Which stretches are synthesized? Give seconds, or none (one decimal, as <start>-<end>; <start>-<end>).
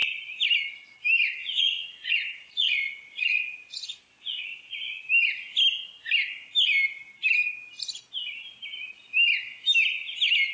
1.4-5.1